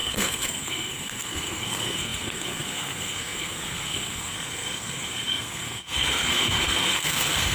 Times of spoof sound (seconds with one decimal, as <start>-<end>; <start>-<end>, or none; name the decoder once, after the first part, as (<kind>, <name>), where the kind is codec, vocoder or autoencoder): 0.0-7.5 (codec, SNAC)